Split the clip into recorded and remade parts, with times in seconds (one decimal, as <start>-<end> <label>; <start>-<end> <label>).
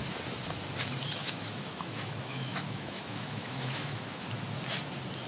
0.0-1.2 recorded; 1.2-4.2 remade; 4.2-5.3 recorded